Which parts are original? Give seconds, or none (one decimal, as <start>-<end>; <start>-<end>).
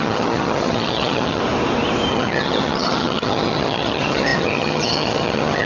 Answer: 1.4-2.1